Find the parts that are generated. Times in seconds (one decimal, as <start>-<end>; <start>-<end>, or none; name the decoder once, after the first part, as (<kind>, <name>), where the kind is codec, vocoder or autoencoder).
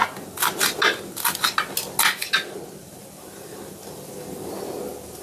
2.9-5.2 (vocoder, BigVGAN v2)